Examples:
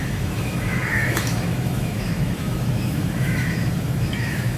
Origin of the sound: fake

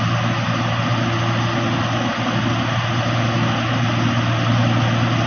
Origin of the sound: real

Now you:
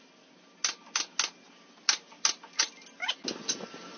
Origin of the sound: real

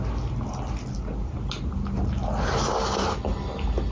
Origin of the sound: real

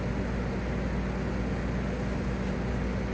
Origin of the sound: real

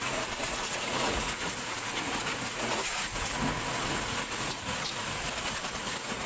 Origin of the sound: fake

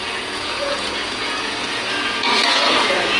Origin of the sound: fake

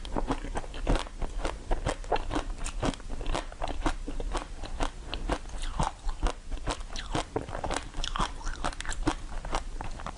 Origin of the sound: real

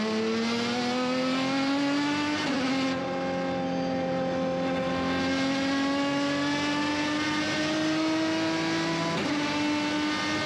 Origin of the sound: real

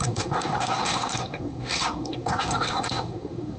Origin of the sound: fake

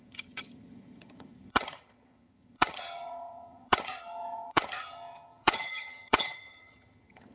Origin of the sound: fake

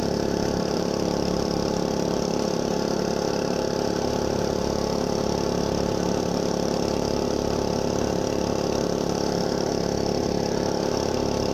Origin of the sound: fake